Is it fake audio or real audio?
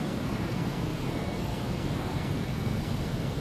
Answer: fake